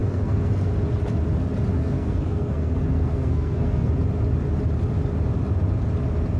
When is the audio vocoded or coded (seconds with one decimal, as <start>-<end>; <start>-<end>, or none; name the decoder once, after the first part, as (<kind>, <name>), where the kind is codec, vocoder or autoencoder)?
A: 0.0-0.7 (codec, SNAC); 1.8-3.9